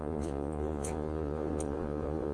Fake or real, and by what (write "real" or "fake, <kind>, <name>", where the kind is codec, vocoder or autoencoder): fake, vocoder, Vocos